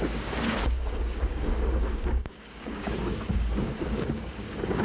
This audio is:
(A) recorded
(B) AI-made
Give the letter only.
B